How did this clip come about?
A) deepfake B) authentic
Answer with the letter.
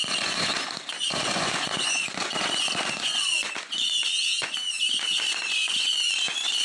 A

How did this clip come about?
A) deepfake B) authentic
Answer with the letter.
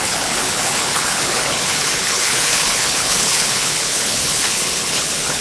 A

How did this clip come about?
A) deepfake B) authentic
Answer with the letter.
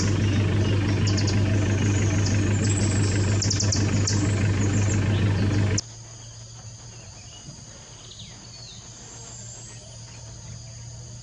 B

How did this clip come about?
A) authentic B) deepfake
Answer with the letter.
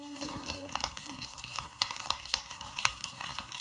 B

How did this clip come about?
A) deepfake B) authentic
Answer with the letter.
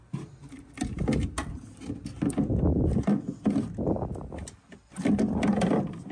B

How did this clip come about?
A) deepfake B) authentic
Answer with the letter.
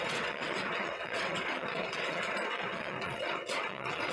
A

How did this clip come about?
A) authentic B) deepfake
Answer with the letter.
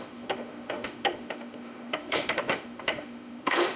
B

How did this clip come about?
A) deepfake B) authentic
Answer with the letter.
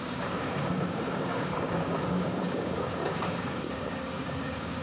A